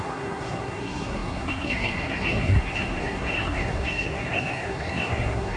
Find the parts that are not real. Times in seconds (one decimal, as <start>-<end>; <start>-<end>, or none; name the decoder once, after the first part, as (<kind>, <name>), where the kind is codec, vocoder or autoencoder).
0.0-5.6 (codec, SNAC)